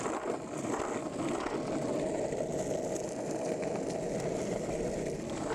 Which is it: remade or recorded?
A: recorded